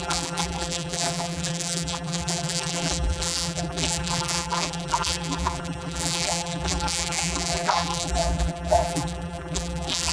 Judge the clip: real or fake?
fake